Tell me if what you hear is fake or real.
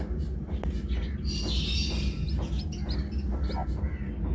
real